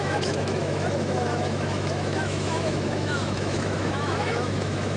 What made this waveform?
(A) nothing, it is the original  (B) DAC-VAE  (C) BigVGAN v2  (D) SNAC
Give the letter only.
B